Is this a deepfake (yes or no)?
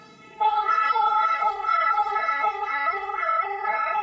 yes